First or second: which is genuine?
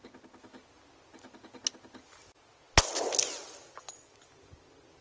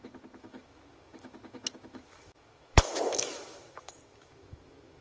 first